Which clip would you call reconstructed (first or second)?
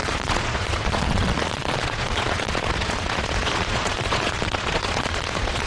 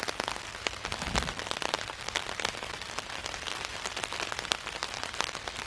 first